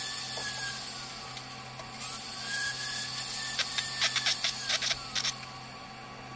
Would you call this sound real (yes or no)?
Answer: yes